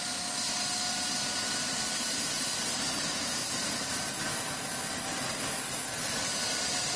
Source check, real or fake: real